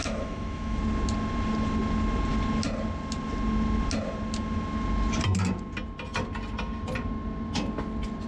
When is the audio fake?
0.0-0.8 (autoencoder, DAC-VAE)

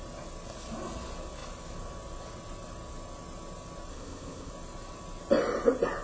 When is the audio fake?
3.9-4.5 (codec, ZipCodec)